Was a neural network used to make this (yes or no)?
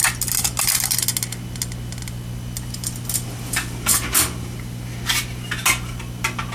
no